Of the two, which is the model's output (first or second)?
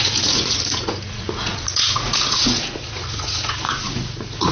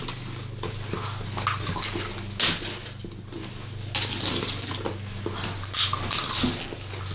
first